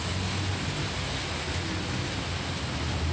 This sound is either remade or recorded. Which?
recorded